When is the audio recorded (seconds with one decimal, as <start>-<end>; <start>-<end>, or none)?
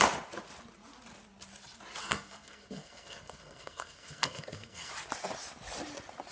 0.0-2.0; 4.9-6.3